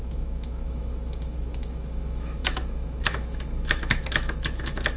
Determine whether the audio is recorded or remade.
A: remade